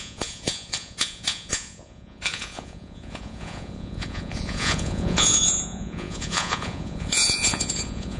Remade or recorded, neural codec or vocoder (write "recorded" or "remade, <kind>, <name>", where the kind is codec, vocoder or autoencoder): remade, vocoder, Vocos